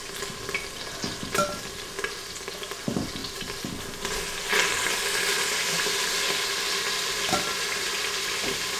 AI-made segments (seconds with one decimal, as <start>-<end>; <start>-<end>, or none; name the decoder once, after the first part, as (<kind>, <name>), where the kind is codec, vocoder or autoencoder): 3.2-3.7 (vocoder, BigVGAN v2)